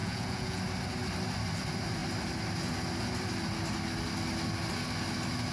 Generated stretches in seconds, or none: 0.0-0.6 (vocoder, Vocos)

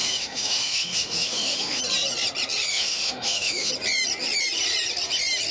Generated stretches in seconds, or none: 0.0-1.8 (autoencoder, DAC-VAE); 2.7-3.7

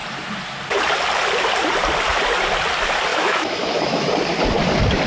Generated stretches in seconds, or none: 3.1-4.1 (autoencoder, DAC-VAE)

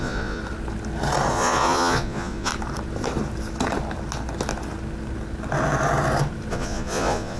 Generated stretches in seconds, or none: 0.0-0.4 (vocoder, Vocos); 1.3-2.5; 6.5-7.4